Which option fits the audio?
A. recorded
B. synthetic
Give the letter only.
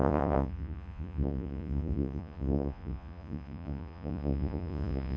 B